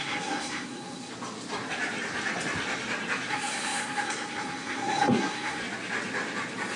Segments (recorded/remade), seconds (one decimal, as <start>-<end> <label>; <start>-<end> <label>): 0.0-1.1 remade; 1.1-3.3 recorded; 3.3-5.6 remade; 5.6-6.8 recorded